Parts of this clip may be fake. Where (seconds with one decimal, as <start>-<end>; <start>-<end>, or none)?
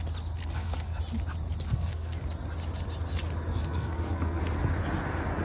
0.4-1.0; 1.7-2.2; 3.5-4.4